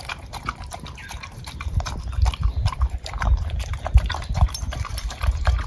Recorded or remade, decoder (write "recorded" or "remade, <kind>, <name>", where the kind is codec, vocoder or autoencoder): remade, vocoder, BigVGAN v2